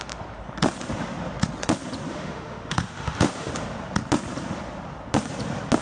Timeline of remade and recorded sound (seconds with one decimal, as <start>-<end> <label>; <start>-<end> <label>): 0.0-2.1 recorded; 2.1-3.5 remade; 3.5-5.8 recorded